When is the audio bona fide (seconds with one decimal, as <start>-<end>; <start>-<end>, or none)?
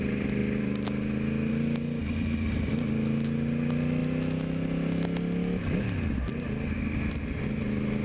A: 0.0-8.0